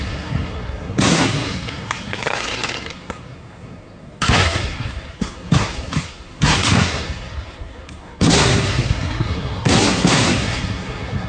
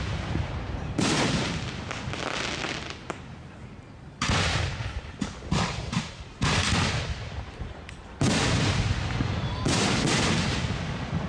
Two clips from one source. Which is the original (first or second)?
second